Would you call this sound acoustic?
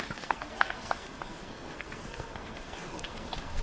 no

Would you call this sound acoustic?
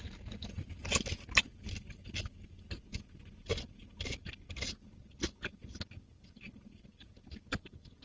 yes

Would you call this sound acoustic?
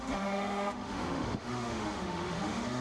no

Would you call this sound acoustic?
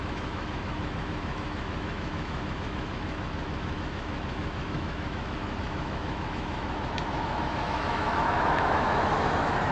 no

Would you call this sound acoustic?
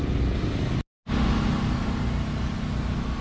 yes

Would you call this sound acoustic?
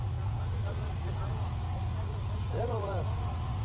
no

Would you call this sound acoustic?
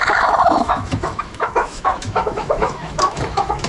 no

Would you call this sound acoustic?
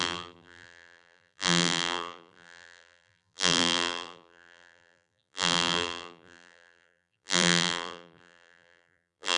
no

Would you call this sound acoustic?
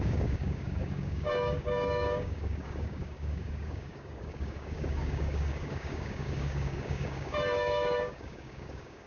no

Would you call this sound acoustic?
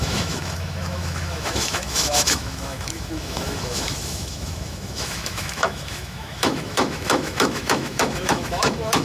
no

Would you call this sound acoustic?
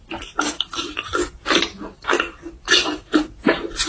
yes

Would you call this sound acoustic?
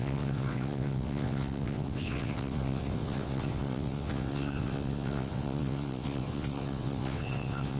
no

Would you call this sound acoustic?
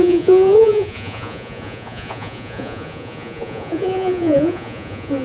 no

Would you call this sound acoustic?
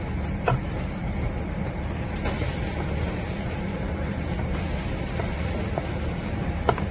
no